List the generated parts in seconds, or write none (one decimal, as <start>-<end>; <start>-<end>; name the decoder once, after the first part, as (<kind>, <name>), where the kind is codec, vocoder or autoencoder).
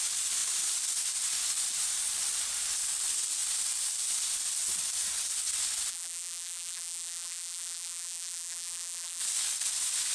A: 5.9-9.2 (vocoder, BigVGAN v2)